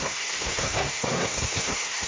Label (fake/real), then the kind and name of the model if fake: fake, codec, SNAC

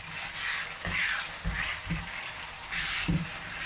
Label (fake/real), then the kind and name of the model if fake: real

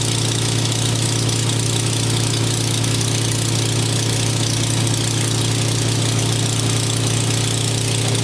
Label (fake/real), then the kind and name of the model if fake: real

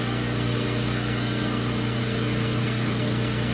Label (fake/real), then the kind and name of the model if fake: fake, codec, SNAC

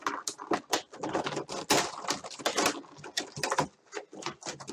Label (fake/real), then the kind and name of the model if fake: real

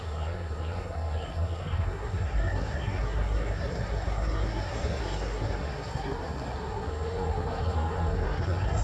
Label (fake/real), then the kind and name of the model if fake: fake, codec, SNAC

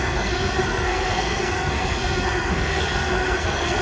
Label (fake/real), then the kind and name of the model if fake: fake, codec, SNAC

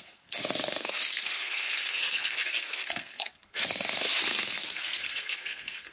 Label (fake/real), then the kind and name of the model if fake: fake, codec, SNAC